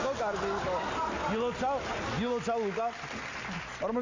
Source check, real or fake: real